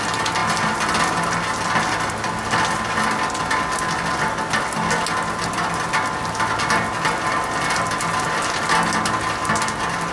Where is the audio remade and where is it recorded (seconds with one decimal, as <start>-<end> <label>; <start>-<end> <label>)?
0.0-10.1 recorded